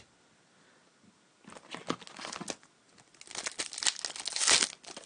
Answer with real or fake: real